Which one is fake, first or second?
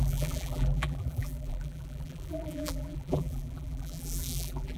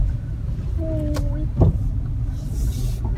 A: first